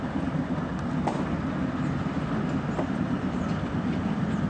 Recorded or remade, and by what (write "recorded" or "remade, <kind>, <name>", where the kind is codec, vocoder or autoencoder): remade, vocoder, BigVGAN v2